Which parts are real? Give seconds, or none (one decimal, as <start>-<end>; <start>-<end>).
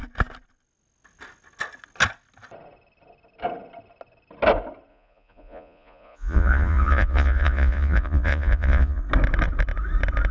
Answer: 0.0-4.9; 9.0-10.3